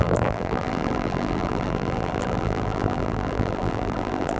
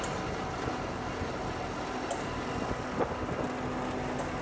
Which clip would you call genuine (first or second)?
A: second